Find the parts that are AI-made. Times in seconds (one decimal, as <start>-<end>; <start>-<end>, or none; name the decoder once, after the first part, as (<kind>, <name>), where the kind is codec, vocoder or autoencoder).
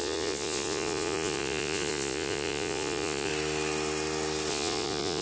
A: 0.0-3.3 (vocoder, Vocos); 4.5-5.2